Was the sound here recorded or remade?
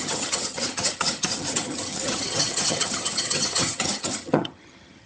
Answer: remade